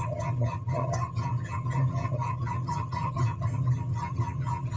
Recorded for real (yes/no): no